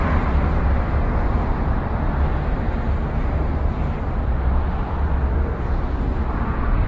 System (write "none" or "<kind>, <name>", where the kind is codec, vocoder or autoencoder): vocoder, BigVGAN v2